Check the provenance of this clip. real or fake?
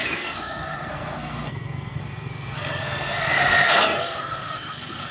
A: fake